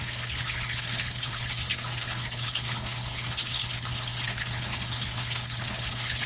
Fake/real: fake